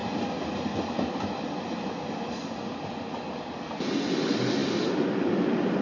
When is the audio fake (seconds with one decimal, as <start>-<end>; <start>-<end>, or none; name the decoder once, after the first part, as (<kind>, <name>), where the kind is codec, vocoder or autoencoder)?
none